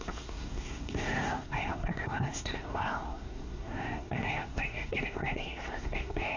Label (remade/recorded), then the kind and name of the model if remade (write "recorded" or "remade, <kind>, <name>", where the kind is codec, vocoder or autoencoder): remade, codec, SNAC